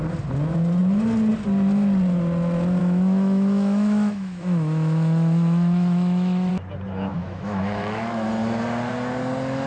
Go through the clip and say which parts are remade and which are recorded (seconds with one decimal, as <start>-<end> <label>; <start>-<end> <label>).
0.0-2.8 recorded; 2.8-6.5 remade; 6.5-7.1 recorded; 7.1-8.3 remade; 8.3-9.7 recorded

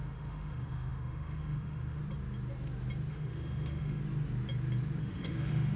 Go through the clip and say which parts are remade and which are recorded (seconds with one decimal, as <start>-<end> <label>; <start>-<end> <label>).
0.0-2.0 remade; 2.0-3.1 recorded; 3.1-4.0 remade; 4.0-5.0 recorded; 5.0-5.8 remade

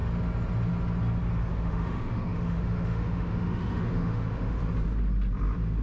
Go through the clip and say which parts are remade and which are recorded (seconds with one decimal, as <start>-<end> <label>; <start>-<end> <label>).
0.0-1.5 recorded; 1.5-4.6 remade; 4.6-5.8 recorded

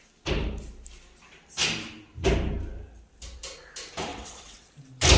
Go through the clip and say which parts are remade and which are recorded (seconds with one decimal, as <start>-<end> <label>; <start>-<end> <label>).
0.0-4.1 recorded; 4.1-4.7 remade; 4.7-5.2 recorded